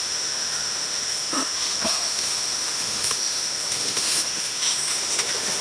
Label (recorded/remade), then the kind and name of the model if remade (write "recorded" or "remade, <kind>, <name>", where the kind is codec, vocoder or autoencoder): remade, autoencoder, DAC-VAE